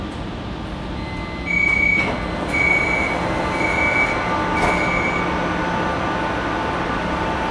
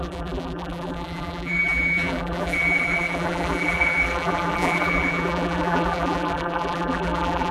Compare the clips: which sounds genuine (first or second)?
first